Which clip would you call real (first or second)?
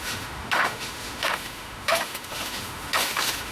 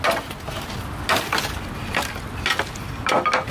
second